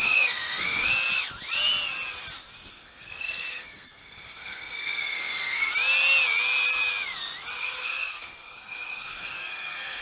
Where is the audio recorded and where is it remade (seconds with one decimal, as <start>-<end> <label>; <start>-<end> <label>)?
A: 0.0-0.9 remade; 0.9-2.7 recorded; 2.7-5.7 remade; 5.7-7.6 recorded; 7.6-10.0 remade